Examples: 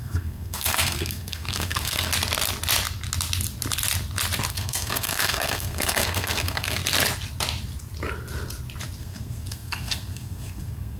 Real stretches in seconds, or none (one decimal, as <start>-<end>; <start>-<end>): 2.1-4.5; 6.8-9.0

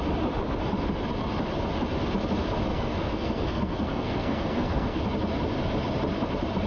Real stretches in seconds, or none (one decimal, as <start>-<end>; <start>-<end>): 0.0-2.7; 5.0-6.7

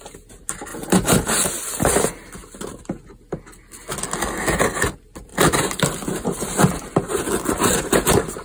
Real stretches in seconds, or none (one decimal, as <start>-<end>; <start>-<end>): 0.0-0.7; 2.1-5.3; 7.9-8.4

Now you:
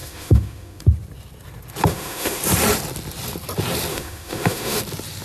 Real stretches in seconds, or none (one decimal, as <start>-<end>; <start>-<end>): 0.8-1.9; 2.4-3.9; 4.8-5.2